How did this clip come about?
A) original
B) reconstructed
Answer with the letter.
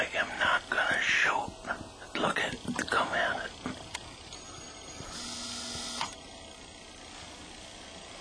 A